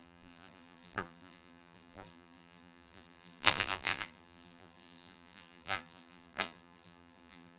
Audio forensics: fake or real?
fake